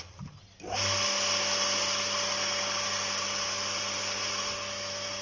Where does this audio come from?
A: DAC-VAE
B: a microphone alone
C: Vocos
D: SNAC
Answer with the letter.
B